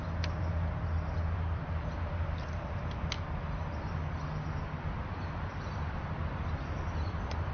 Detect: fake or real real